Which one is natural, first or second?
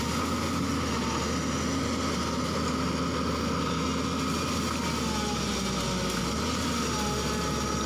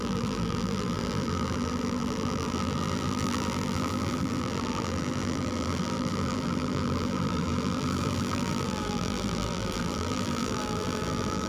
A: first